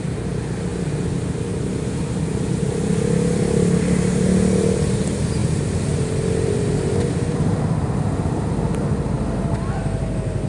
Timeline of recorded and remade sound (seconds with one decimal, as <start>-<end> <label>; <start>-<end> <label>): 0.0-10.5 recorded